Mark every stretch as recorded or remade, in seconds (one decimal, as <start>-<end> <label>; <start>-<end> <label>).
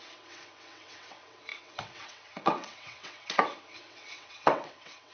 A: 0.0-5.1 remade